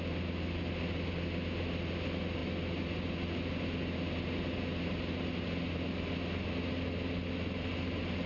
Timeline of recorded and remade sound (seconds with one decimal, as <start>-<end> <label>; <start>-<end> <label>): 0.0-8.3 recorded